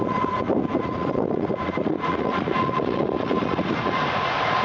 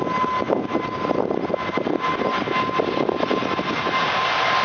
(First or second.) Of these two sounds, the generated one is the first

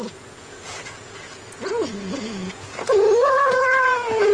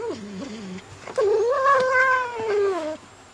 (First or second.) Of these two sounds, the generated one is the first